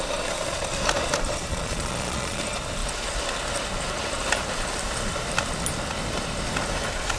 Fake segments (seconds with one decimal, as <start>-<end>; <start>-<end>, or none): 1.5-2.4